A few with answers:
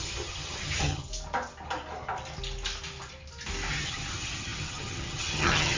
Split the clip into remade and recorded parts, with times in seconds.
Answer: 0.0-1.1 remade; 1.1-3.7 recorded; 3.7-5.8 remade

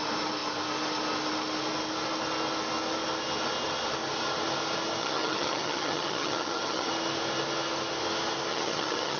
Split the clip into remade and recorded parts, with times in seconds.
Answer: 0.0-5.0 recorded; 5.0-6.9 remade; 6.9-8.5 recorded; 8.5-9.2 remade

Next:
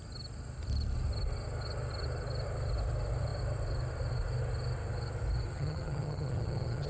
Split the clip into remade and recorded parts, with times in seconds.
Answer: 0.0-5.5 recorded; 5.5-6.9 remade

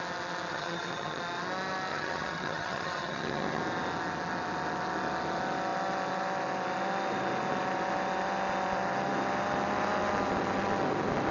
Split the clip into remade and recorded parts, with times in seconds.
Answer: 0.0-0.5 recorded; 0.5-1.2 remade; 1.2-1.9 recorded; 1.9-3.6 remade; 3.6-11.3 recorded

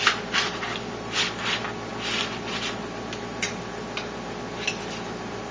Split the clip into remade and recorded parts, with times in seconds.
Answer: 0.0-5.5 recorded

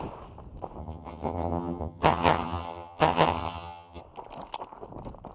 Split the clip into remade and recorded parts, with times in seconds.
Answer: 0.0-0.8 recorded; 0.8-4.0 remade; 4.0-5.3 recorded

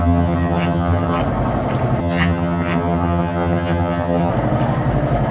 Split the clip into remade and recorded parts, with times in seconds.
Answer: 0.0-1.2 remade; 1.2-2.0 recorded; 2.0-4.3 remade; 4.3-5.3 recorded

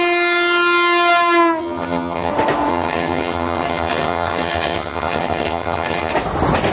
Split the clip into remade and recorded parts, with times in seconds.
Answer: 0.0-1.6 recorded; 1.6-2.3 remade; 2.3-2.7 recorded; 2.7-6.1 remade; 6.1-6.7 recorded